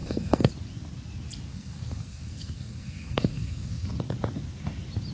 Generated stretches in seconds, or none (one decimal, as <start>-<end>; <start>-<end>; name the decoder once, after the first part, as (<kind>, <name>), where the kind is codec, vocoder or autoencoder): 0.0-0.5 (codec, SNAC); 1.5-3.9